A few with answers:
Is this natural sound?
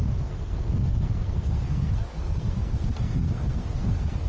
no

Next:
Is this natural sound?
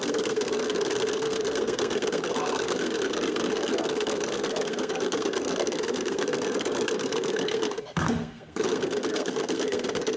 no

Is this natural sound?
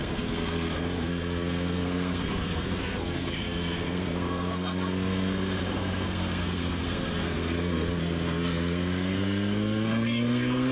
no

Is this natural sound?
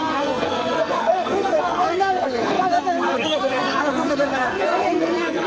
no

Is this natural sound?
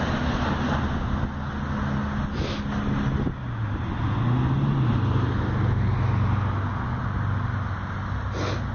yes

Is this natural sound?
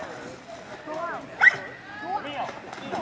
yes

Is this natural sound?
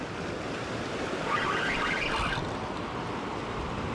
yes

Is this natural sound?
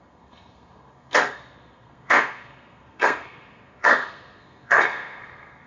no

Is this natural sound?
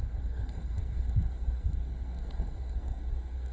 no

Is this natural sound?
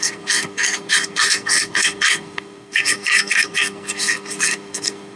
no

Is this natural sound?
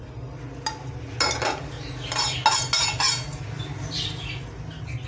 yes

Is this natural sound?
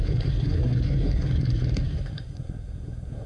no